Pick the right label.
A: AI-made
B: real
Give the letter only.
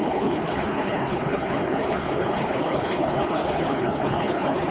A